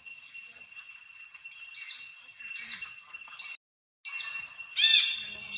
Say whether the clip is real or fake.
real